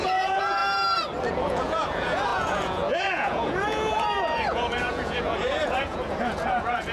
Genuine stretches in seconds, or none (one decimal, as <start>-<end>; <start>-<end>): 0.6-1.3